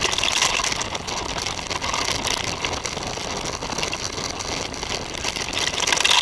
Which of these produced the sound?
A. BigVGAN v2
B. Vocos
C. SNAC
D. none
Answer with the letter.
D